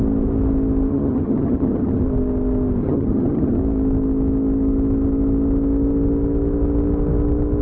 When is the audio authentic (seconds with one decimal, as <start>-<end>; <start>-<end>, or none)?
0.0-0.9; 2.0-2.8; 3.6-7.6